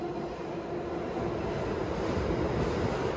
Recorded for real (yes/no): yes